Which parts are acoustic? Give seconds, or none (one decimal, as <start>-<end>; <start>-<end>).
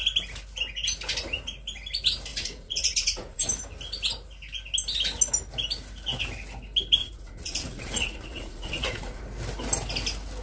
0.0-2.3; 3.6-7.0; 9.2-10.4